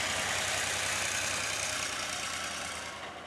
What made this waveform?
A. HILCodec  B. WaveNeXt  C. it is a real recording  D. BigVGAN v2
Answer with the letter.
C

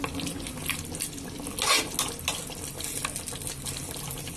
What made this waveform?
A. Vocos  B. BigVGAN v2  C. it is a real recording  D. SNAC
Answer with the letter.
C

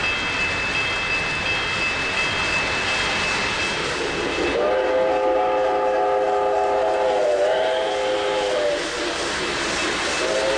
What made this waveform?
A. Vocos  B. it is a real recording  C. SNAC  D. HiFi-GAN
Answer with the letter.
B